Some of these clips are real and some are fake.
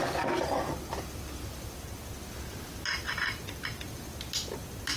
real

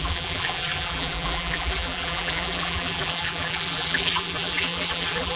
fake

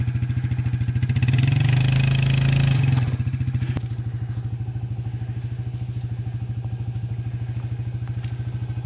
real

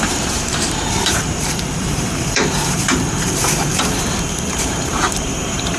fake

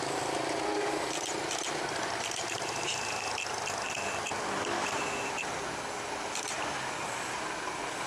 real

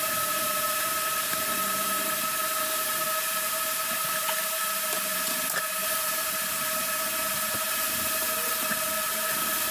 fake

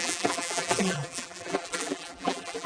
fake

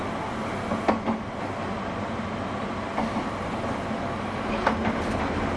real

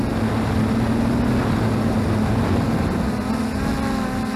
real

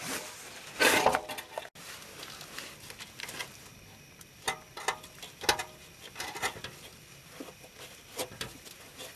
real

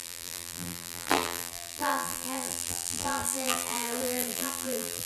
fake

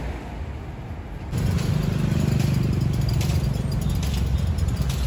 real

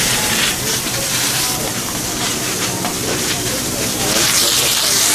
fake